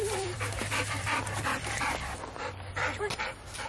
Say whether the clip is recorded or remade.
remade